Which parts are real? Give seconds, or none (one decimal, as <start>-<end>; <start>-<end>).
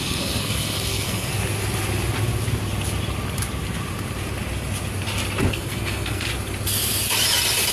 1.3-5.5; 6.3-7.7